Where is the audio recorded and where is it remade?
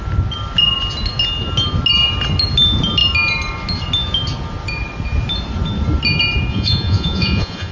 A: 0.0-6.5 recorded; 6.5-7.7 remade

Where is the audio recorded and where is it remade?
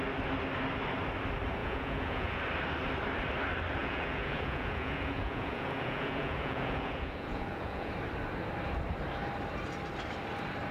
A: 0.0-1.6 recorded; 1.6-2.4 remade; 2.4-3.8 recorded; 3.8-7.9 remade; 7.9-10.7 recorded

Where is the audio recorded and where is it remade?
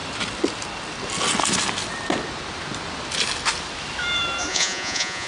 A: 0.0-4.5 recorded; 4.5-5.3 remade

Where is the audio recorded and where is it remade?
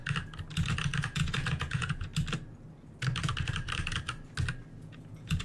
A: 0.0-1.0 recorded; 1.0-2.1 remade; 2.1-4.8 recorded; 4.8-5.4 remade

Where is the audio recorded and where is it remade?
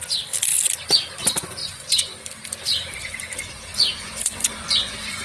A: 0.0-1.6 recorded; 1.6-2.2 remade; 2.2-3.7 recorded; 3.7-5.2 remade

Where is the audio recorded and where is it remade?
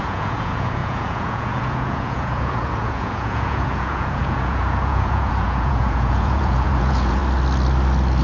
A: 0.0-7.2 remade; 7.2-8.2 recorded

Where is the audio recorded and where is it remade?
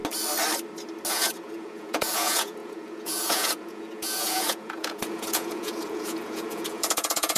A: 0.0-1.1 recorded; 1.1-7.4 remade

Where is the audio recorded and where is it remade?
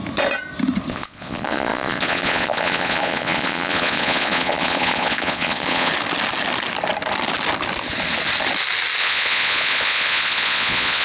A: 0.0-0.9 recorded; 0.9-5.9 remade; 5.9-9.0 recorded; 9.0-11.0 remade